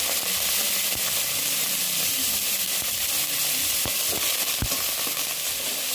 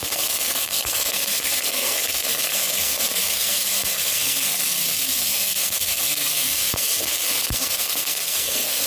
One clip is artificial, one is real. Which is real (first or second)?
first